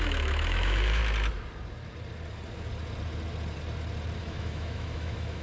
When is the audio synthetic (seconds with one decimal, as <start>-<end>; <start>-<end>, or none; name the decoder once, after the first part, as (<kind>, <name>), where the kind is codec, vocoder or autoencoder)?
0.0-1.0 (autoencoder, DAC-VAE); 4.2-5.4

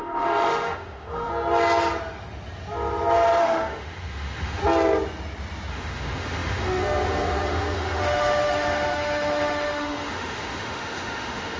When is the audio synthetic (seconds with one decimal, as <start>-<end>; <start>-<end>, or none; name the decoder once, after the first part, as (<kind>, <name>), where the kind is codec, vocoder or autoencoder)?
0.0-1.3 (autoencoder, DAC-VAE); 3.4-4.6; 5.7-11.6

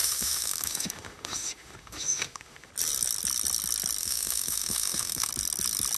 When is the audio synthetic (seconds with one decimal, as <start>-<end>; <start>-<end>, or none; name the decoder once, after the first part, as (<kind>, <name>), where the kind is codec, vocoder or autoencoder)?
0.0-2.7 (autoencoder, DAC-VAE); 4.0-5.3

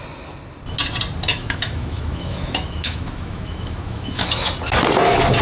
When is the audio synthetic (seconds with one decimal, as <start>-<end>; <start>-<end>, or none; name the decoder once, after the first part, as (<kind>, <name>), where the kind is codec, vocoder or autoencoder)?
1.3-4.5 (autoencoder, DAC-VAE)

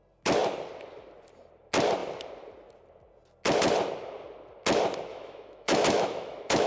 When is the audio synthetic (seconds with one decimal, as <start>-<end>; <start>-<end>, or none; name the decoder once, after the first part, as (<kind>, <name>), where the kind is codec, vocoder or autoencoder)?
5.1-6.7 (autoencoder, DAC-VAE)

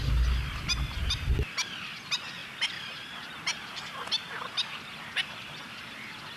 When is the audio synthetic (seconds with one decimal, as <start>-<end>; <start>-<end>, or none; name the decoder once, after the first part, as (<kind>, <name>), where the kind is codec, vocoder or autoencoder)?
none

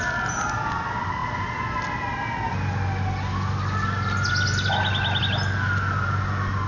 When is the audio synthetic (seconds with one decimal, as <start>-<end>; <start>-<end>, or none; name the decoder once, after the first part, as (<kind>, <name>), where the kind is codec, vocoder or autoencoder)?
none

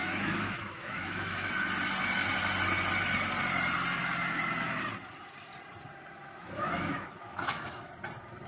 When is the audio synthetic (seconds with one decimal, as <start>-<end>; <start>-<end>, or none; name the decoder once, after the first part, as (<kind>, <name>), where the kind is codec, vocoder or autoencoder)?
0.0-1.5 (autoencoder, DAC-VAE); 6.2-7.9